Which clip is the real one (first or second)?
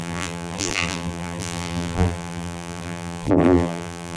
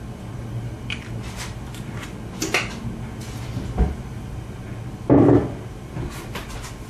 second